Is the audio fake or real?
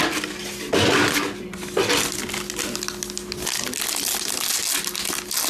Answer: real